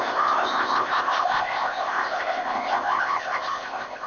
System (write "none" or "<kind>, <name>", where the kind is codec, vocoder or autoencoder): codec, ZipCodec